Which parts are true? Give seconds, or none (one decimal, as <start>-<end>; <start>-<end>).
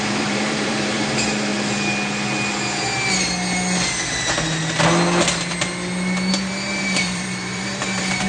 1.5-6.3